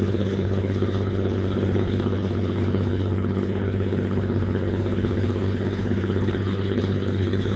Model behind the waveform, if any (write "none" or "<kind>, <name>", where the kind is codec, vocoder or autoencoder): codec, HILCodec